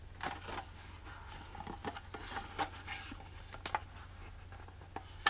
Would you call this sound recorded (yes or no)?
yes